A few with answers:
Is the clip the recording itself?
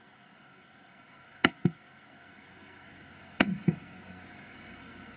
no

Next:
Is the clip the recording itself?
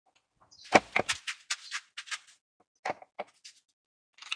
yes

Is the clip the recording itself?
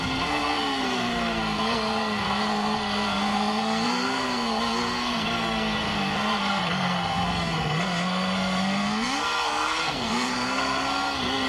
no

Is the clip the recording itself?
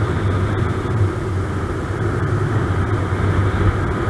yes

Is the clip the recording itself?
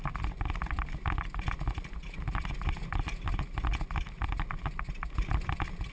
yes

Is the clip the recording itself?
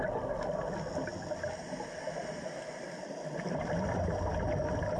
yes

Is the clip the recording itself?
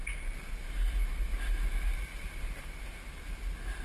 yes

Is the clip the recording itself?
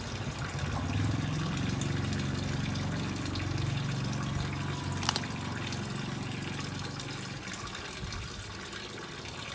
yes